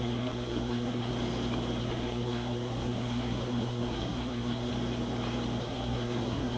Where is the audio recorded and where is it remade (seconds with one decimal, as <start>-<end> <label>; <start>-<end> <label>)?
0.0-1.1 remade; 1.1-1.8 recorded; 1.8-4.7 remade; 4.7-5.6 recorded; 5.6-6.6 remade